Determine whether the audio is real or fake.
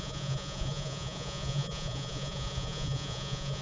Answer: fake